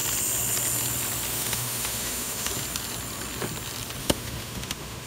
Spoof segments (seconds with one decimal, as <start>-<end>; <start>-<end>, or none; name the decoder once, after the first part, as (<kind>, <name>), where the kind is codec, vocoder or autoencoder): 1.3-2.5 (autoencoder, DAC-VAE); 4.0-5.1